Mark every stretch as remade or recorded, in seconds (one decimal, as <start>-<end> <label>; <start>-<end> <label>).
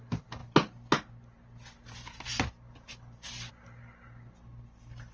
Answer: 0.0-5.1 recorded